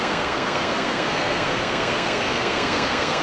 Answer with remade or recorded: remade